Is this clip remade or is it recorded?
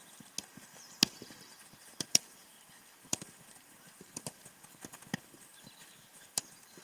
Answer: recorded